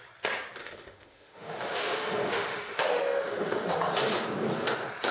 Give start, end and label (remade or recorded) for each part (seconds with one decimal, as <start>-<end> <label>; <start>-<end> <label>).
0.0-0.6 recorded; 0.6-3.7 remade; 3.7-5.1 recorded